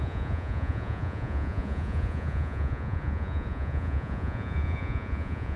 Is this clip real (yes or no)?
no